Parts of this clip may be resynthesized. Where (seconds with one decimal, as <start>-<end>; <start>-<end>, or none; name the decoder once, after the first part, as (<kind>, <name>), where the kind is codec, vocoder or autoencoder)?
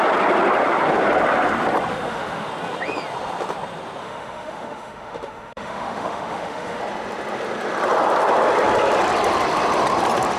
1.9-2.5 (autoencoder, DAC-VAE); 4.0-6.8